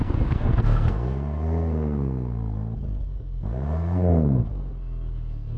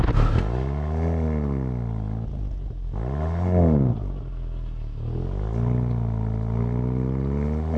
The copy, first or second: first